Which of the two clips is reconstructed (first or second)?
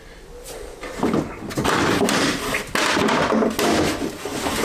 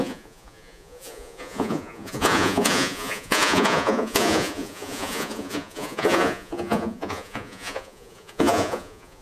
second